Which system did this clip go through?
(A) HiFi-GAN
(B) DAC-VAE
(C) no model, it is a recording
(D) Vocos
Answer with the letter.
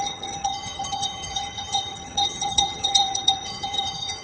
A